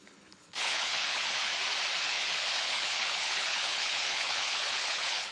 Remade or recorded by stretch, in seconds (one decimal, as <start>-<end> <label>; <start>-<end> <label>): 0.0-1.5 remade; 1.5-2.0 recorded; 2.0-5.3 remade